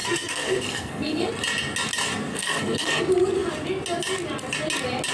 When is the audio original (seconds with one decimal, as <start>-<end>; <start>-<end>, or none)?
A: 1.3-2.3; 3.0-5.1